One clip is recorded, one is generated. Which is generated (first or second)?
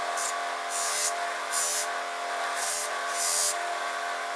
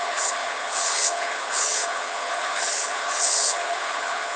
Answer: second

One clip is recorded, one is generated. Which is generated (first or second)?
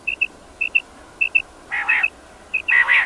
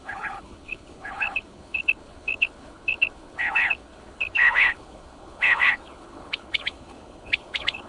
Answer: second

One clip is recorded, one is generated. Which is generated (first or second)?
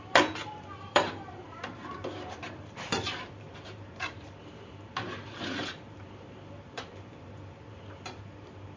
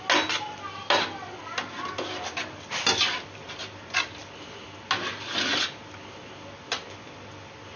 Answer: first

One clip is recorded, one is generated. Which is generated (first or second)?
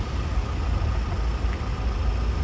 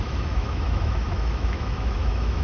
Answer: second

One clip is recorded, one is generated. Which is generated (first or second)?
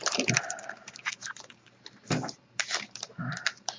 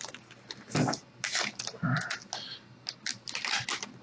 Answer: first